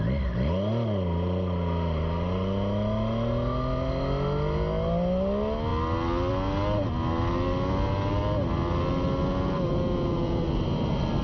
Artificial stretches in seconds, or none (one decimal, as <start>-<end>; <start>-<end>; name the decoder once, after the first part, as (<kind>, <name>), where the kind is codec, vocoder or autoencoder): 9.7-10.4 (vocoder, Vocos)